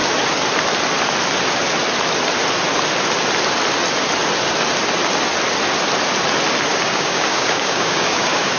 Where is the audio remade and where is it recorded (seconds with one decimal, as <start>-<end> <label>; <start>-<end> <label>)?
0.0-6.7 recorded; 6.7-8.6 remade